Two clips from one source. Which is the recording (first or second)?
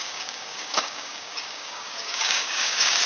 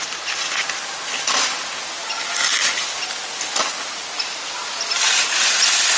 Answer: second